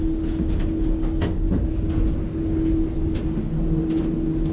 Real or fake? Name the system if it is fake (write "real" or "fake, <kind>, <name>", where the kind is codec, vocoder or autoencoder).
real